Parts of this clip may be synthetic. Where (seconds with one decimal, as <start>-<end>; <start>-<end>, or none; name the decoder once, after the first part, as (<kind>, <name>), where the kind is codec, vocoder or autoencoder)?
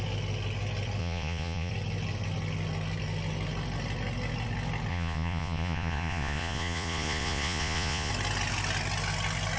1.0-1.7 (vocoder, Vocos); 4.9-8.1